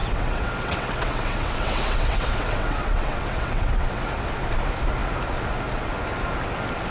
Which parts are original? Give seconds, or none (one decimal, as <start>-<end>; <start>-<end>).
4.1-6.9